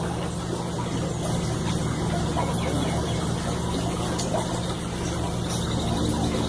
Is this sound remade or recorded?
recorded